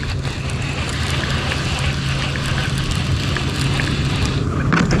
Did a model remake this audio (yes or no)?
no